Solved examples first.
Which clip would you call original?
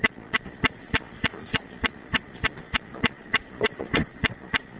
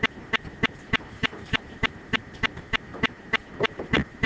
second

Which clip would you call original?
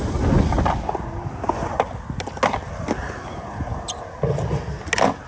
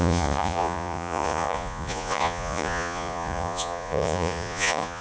first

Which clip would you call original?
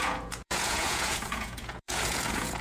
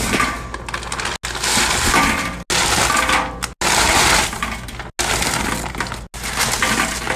second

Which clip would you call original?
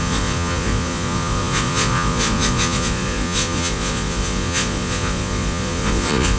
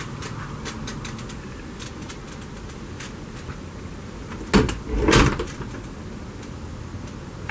second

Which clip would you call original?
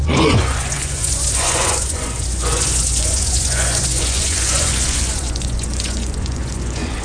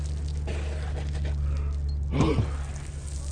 second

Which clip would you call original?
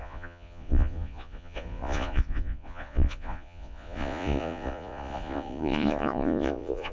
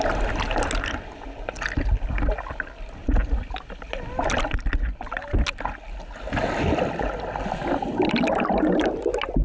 second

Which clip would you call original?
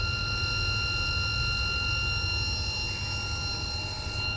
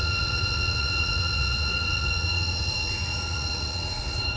first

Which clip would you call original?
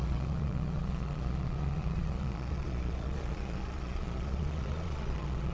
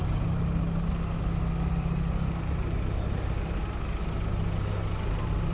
second